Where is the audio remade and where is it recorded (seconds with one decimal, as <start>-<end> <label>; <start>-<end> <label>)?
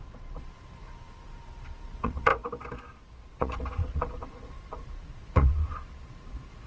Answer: 0.0-2.3 remade; 2.3-3.4 recorded; 3.4-6.7 remade